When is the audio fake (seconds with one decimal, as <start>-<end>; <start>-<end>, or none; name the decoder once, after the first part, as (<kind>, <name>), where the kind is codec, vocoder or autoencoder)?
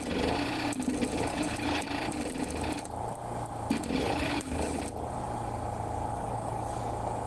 1.3-1.9 (codec, HILCodec); 4.0-4.8; 6.1-6.8